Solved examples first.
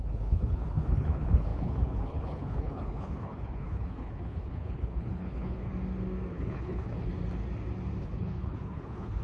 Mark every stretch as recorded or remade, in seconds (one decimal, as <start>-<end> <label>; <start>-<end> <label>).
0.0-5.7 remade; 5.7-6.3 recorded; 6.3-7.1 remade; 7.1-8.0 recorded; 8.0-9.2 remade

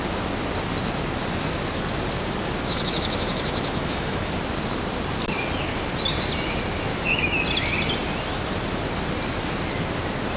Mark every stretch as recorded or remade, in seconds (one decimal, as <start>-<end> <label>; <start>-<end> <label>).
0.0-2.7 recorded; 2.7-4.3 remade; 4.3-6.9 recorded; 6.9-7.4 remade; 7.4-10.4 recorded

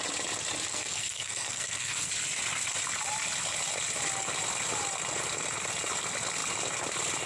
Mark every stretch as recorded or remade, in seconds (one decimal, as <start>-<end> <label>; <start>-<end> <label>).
0.0-0.7 recorded; 0.7-2.1 remade; 2.1-7.3 recorded

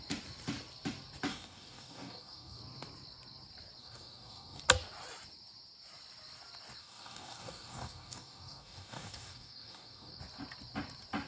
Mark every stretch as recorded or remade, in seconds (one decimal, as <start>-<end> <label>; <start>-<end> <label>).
0.0-1.3 recorded; 1.3-2.6 remade; 2.6-3.8 recorded; 3.8-4.6 remade; 4.6-6.8 recorded; 6.8-10.2 remade; 10.2-11.3 recorded